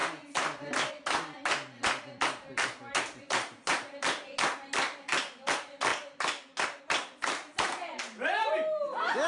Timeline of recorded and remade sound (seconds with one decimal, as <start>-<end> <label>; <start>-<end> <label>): 0.0-9.3 recorded